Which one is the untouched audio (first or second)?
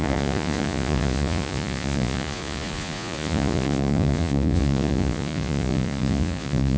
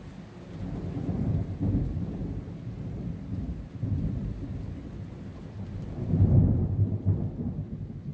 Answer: second